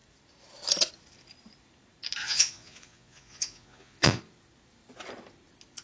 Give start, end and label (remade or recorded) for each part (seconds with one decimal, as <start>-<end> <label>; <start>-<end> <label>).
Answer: 0.0-2.2 recorded; 2.2-4.2 remade; 4.2-5.8 recorded